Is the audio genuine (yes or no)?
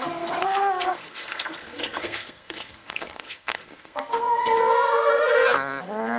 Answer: no